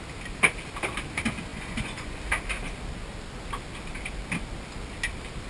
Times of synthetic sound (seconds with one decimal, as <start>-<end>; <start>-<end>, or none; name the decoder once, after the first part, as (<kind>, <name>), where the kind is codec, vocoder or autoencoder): 1.5-2.2 (vocoder, Vocos)